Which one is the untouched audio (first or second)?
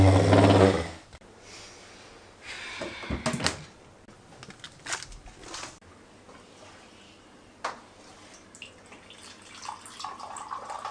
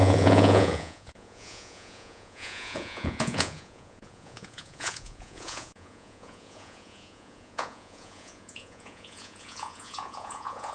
first